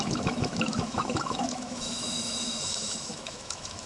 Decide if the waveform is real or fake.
fake